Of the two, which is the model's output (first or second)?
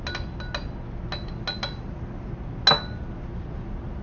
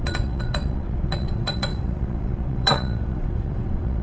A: second